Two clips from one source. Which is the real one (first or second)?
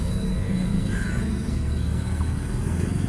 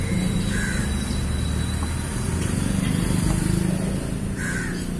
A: second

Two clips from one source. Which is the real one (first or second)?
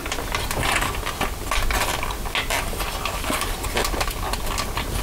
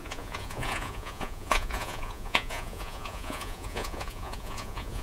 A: first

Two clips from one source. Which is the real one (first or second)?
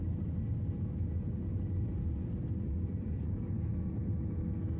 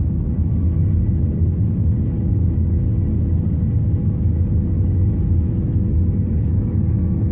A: second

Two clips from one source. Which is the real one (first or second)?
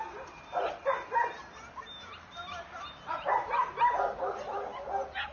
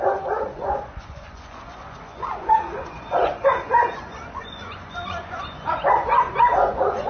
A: first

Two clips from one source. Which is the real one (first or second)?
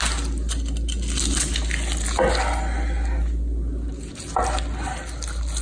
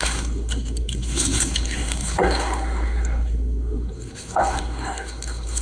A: first